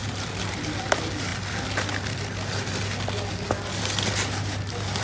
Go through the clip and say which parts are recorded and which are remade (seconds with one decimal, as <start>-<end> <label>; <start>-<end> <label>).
0.0-0.6 remade; 0.6-5.0 recorded